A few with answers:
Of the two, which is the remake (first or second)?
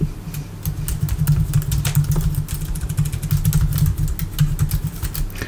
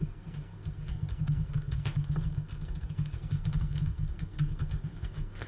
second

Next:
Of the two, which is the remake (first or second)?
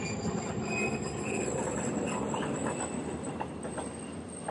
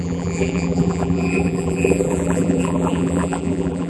second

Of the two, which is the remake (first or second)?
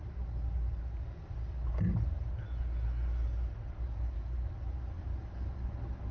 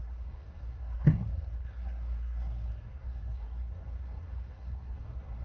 second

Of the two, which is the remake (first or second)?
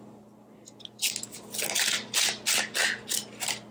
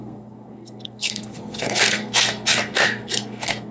second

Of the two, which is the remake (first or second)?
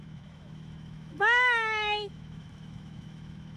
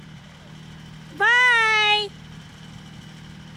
first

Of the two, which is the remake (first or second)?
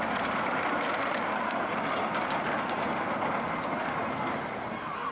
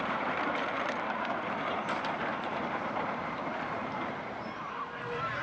second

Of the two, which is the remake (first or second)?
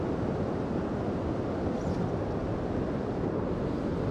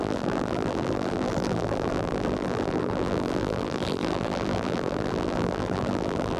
second